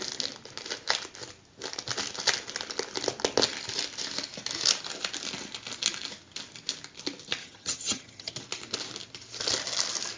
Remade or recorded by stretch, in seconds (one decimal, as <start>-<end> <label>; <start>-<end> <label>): 0.0-7.4 recorded; 7.4-8.3 remade; 8.3-10.2 recorded